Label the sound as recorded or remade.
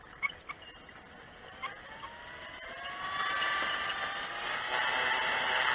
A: recorded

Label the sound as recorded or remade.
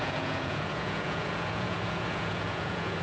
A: remade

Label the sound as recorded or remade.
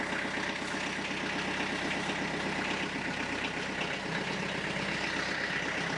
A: recorded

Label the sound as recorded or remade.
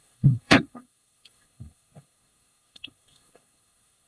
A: remade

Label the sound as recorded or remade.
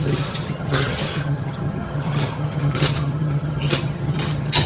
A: remade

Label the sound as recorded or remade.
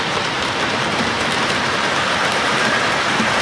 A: remade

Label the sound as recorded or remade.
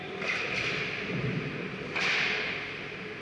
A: recorded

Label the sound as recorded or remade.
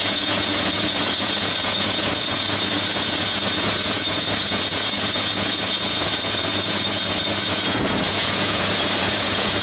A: remade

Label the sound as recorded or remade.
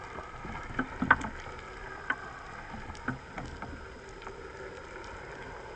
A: recorded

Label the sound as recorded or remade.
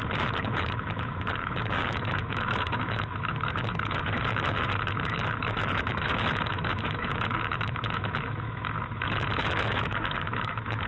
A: remade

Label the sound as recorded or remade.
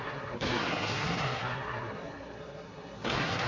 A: remade